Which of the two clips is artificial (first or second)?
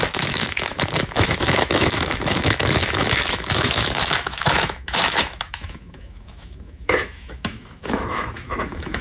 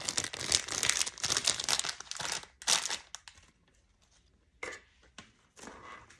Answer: first